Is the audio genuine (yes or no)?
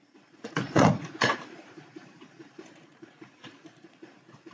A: no